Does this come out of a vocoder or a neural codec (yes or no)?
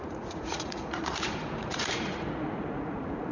yes